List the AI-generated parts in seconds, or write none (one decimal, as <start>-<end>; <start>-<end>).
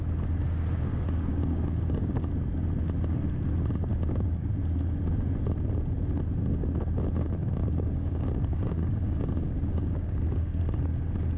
1.3-2.3; 3.9-4.5; 7.6-10.6